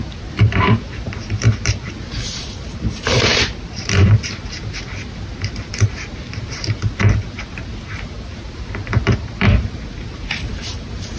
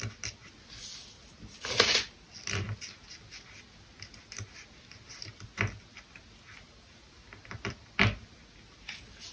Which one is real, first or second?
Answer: second